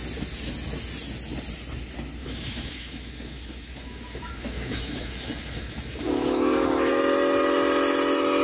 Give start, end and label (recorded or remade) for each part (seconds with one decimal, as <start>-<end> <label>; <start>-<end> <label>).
0.0-2.2 recorded; 2.2-6.9 remade; 6.9-8.4 recorded